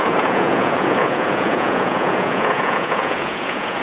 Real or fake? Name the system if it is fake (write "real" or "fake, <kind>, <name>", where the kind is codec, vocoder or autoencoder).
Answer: fake, vocoder, Vocos